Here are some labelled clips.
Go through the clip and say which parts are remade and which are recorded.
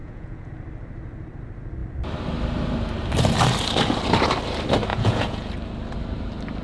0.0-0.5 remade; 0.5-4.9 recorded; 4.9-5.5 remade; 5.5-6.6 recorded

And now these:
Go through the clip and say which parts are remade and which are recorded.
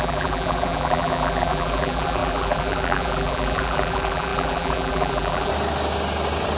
0.0-5.5 remade; 5.5-6.6 recorded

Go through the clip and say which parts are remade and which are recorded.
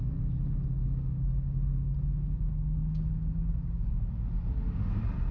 0.0-0.8 recorded; 0.8-4.0 remade; 4.0-5.3 recorded